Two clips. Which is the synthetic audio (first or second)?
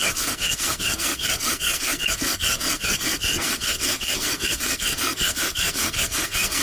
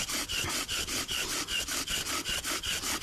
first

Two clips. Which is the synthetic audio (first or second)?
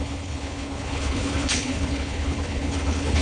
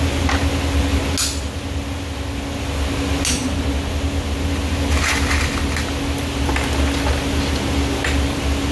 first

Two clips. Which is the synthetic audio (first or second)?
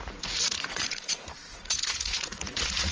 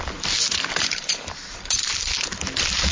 first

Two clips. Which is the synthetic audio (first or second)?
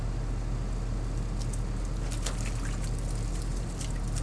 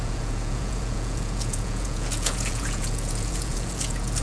second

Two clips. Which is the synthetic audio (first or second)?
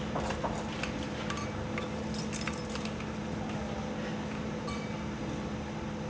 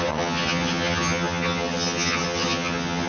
second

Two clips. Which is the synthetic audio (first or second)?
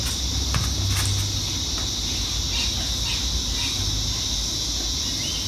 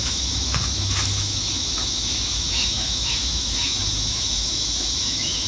second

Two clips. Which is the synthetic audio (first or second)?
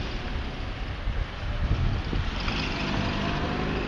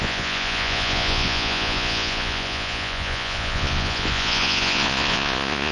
second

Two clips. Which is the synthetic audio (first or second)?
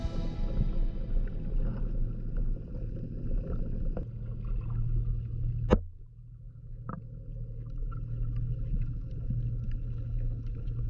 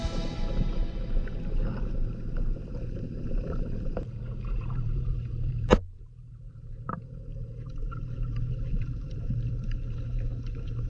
second